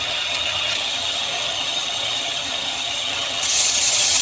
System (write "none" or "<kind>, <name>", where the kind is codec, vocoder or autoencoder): vocoder, HiFi-GAN